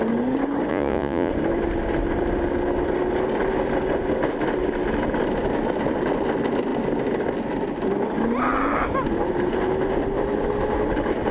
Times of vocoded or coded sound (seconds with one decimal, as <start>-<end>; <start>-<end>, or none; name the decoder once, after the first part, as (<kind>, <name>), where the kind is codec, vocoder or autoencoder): 0.7-1.3 (vocoder, Vocos)